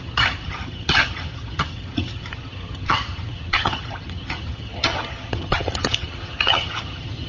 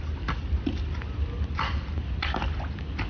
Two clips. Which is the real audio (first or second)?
second